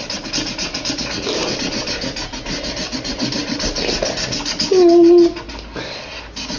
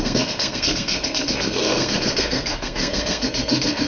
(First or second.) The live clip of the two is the first